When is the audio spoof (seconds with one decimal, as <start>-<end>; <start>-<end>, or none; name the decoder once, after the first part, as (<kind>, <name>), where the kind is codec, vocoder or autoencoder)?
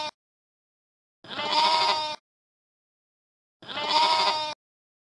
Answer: none